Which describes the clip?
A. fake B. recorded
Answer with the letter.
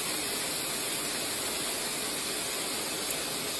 B